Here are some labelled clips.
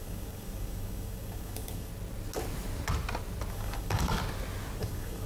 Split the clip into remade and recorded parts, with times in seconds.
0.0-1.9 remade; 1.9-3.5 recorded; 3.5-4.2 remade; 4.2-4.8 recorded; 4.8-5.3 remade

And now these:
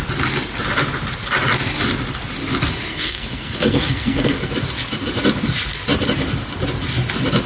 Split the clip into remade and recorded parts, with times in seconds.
0.0-2.9 recorded; 2.9-4.5 remade; 4.5-7.5 recorded

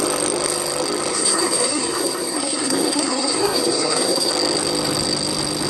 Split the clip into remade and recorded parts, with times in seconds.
0.0-1.1 recorded; 1.1-4.3 remade; 4.3-5.7 recorded

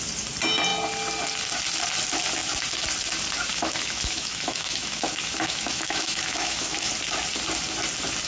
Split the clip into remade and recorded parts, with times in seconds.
0.0-3.5 recorded; 3.5-6.9 remade; 6.9-8.3 recorded

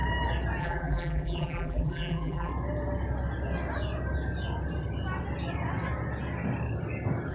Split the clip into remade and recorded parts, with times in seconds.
0.0-0.6 recorded; 0.6-2.5 remade; 2.5-7.3 recorded

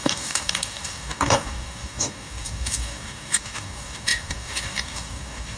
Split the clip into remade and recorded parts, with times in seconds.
0.0-5.6 remade

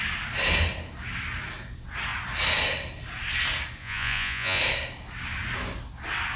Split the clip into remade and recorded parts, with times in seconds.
0.0-3.8 recorded; 3.8-4.6 remade; 4.6-6.4 recorded